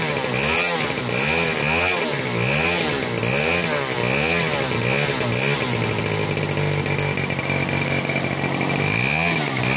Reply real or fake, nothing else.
real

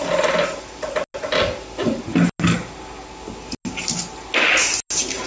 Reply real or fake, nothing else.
real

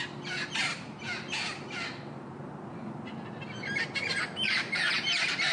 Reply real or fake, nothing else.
real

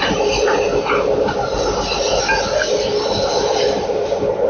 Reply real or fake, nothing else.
real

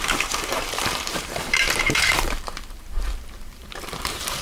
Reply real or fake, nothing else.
fake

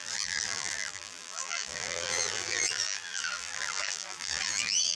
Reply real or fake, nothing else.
fake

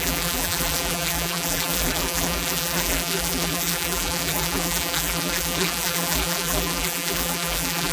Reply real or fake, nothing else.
fake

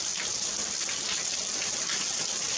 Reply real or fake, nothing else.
real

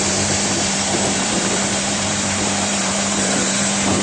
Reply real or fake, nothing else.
fake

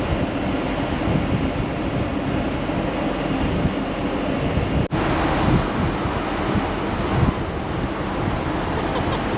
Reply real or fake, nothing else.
real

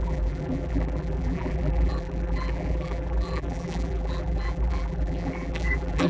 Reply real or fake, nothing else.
fake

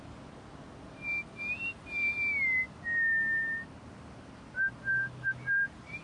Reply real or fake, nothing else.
real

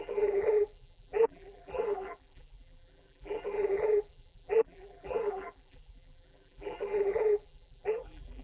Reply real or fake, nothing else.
fake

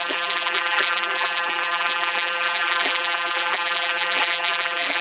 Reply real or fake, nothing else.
fake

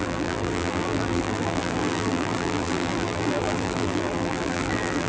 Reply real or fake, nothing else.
fake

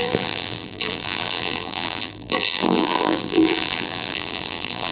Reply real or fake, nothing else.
fake